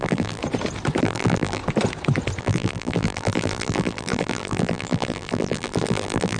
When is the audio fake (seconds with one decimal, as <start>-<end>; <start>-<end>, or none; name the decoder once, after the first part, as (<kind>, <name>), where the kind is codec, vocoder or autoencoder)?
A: 0.0-0.4 (vocoder, BigVGAN v2); 1.0-1.6; 2.4-6.4